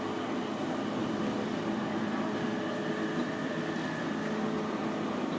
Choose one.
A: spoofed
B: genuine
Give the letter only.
B